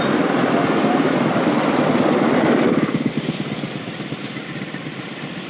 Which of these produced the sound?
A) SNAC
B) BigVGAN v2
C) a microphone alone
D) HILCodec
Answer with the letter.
B